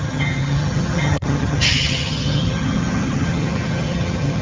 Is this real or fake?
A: fake